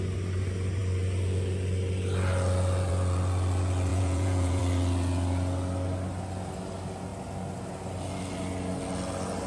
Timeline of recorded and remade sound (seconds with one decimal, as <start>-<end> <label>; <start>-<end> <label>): 0.0-3.9 recorded; 3.9-4.6 remade; 4.6-9.5 recorded